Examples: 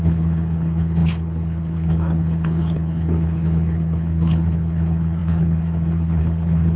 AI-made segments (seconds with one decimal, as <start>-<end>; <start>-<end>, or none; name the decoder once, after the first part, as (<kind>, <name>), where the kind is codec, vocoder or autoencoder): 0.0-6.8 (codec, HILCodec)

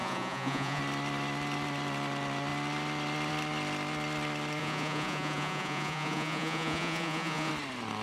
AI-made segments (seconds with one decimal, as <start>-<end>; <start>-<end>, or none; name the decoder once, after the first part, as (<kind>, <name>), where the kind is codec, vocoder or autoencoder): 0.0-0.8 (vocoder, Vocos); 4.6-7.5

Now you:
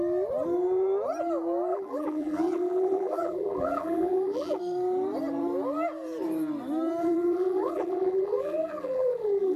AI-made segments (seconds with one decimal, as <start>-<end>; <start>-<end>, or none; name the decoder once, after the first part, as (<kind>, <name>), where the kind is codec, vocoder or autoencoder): 1.7-4.6 (vocoder, BigVGAN v2); 7.0-9.6

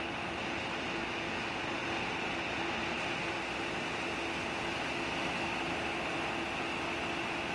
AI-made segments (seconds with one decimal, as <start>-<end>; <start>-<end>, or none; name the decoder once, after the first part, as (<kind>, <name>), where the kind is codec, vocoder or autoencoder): none